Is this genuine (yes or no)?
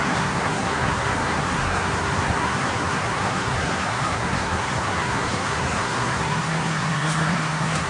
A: no